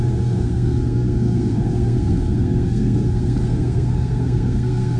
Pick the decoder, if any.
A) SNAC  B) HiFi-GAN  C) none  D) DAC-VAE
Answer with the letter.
A